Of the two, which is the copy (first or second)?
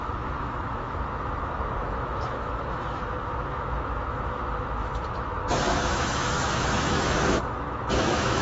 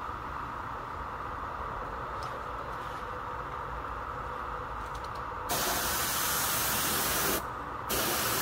first